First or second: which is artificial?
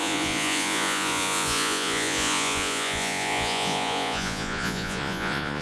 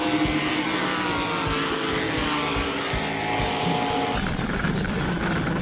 first